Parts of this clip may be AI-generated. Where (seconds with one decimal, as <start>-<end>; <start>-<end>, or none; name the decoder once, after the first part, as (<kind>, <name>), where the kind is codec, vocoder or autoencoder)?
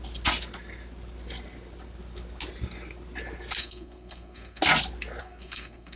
3.6-4.6 (codec, SNAC); 5.2-6.0